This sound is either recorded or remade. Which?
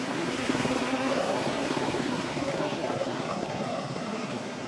remade